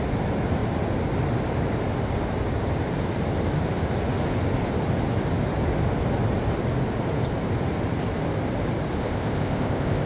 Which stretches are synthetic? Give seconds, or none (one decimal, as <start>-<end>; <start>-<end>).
9.0-10.1